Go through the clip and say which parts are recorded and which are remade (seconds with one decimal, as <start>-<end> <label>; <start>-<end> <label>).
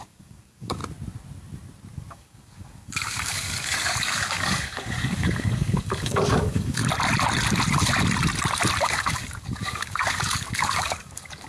0.0-0.8 remade; 0.8-2.1 recorded; 2.1-6.8 remade; 6.8-8.8 recorded; 8.8-11.5 remade